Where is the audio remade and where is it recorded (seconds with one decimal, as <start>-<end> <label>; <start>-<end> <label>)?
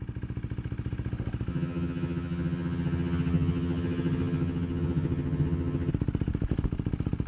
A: 0.0-1.5 recorded; 1.5-5.9 remade; 5.9-7.3 recorded